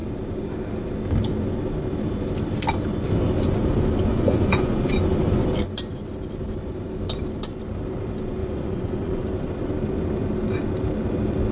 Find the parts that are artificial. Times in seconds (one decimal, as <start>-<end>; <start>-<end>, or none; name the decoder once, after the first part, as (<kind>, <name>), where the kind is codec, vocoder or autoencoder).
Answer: 4.1-4.9 (vocoder, Vocos); 8.4-9.2